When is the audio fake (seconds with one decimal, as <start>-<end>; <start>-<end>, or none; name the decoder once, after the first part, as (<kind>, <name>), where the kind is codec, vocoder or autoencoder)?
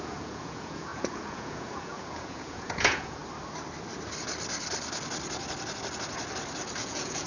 0.0-3.2 (vocoder, Vocos); 6.8-7.3